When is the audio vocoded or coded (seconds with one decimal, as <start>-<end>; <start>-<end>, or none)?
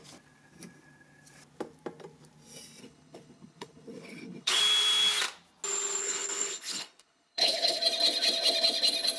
2.8-4.6; 6.0-7.8